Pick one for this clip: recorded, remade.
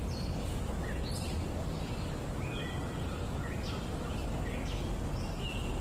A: recorded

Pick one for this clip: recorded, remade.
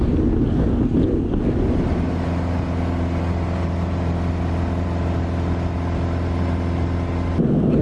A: recorded